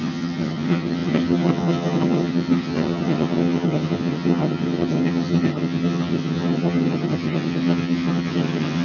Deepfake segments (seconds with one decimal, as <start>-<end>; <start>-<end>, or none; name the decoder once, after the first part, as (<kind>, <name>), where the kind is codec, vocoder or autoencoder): 0.0-8.8 (vocoder, HiFi-GAN)